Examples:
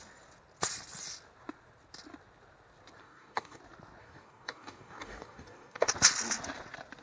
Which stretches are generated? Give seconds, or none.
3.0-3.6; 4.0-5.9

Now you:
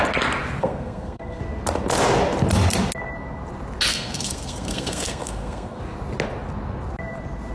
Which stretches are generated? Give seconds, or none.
0.6-1.4; 3.9-5.8

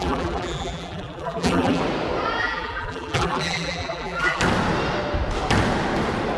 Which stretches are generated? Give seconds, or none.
0.0-1.8; 2.4-4.4

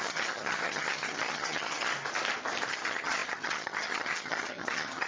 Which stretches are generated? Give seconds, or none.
0.0-1.9; 2.7-5.1

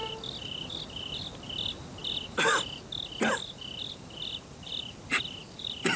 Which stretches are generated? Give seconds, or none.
4.5-6.0

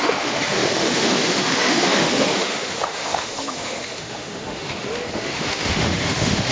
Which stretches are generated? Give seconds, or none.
0.0-6.5

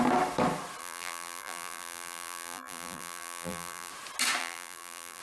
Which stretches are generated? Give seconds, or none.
0.8-3.9; 4.4-5.2